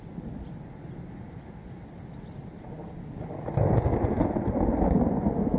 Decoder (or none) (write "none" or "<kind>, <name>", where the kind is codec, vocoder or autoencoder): none